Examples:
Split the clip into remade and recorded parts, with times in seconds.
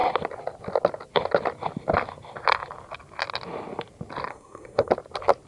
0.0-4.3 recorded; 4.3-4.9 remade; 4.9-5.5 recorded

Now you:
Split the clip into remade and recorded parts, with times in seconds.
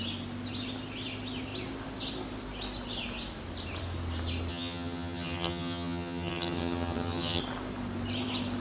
0.0-4.5 recorded; 4.5-7.4 remade; 7.4-8.6 recorded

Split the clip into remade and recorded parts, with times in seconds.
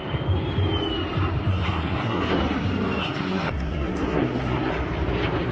0.0-1.5 recorded; 1.5-2.4 remade; 2.4-3.0 recorded; 3.0-4.7 remade; 4.7-5.5 recorded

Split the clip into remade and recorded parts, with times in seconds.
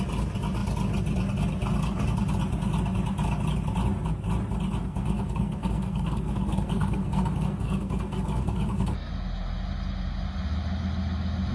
0.0-4.8 recorded; 4.8-9.1 remade; 9.1-11.5 recorded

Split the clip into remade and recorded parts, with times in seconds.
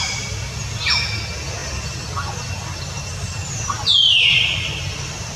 0.0-5.4 recorded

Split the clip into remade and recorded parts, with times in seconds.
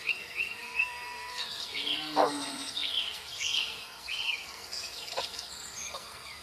0.0-6.4 remade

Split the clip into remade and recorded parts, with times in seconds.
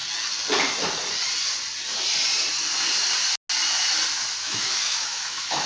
0.0-4.4 recorded; 4.4-5.7 remade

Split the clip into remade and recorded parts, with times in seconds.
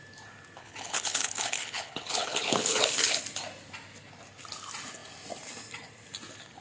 0.0-0.6 recorded; 0.6-3.2 remade; 3.2-6.6 recorded